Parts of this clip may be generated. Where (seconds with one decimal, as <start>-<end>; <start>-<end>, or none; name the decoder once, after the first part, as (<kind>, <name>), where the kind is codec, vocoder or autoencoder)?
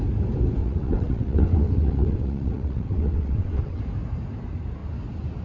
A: 0.6-3.8 (vocoder, WaveNeXt)